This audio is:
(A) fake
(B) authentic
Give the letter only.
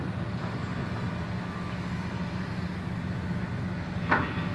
B